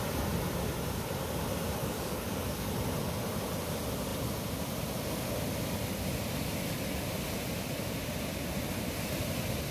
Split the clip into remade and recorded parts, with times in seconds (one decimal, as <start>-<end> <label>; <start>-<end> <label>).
0.0-1.8 recorded; 1.8-2.7 remade; 2.7-9.7 recorded